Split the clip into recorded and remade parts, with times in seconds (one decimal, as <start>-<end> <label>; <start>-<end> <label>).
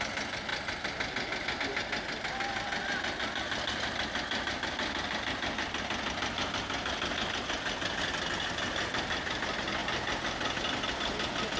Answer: 0.0-11.6 recorded